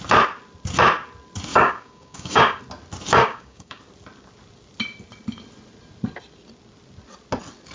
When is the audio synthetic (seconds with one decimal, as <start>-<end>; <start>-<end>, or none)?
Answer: 1.5-2.6; 3.2-3.8